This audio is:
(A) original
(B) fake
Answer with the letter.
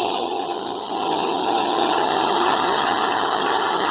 B